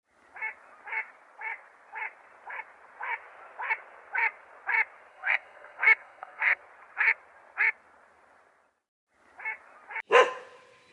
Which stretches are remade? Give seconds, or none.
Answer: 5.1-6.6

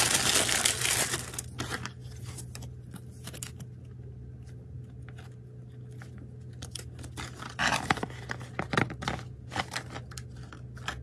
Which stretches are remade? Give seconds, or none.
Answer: none

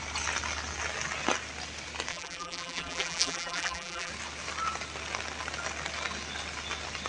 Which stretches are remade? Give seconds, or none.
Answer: 2.1-4.1

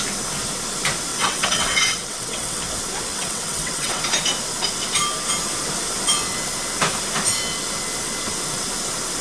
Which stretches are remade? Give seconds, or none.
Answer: 1.1-2.6; 3.1-4.0

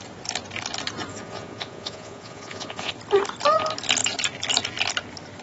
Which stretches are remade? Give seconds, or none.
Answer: 1.1-2.9

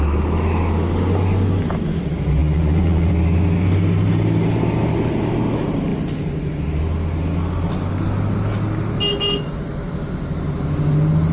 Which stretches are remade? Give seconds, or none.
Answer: 2.4-3.1